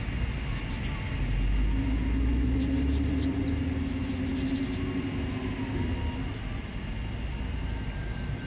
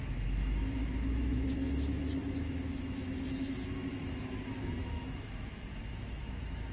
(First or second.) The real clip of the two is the first